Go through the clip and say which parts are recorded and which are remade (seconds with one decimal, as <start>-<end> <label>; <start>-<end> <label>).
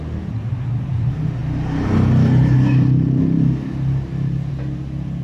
0.0-5.2 recorded